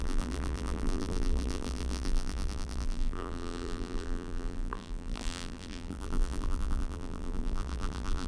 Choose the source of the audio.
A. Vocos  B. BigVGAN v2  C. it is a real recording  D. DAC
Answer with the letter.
B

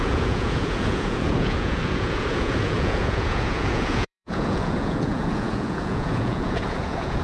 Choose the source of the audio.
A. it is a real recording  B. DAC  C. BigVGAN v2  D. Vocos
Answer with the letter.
D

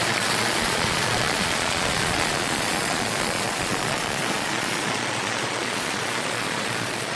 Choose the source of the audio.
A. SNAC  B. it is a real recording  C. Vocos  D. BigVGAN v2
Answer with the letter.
C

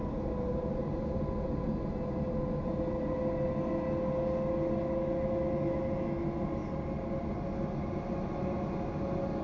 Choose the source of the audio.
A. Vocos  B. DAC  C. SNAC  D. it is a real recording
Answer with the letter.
D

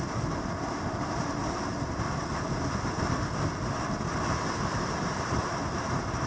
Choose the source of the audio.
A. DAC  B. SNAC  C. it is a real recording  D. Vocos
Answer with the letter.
C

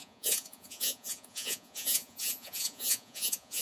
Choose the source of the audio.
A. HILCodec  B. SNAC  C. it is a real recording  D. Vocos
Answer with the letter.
D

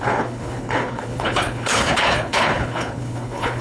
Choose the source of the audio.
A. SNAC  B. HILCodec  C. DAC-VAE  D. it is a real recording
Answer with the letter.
B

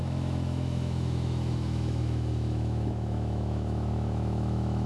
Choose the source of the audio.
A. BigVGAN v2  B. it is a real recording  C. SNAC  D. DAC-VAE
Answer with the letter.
D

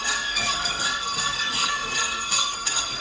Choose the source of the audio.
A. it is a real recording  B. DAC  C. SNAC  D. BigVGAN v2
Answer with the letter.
C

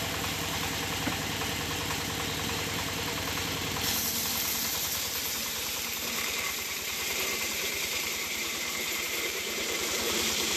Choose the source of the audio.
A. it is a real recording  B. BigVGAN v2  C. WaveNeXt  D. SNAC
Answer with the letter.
B